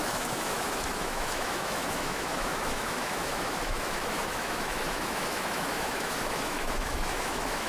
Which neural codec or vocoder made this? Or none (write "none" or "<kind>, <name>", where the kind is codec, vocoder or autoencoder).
autoencoder, DAC-VAE